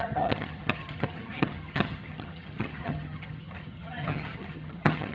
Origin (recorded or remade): remade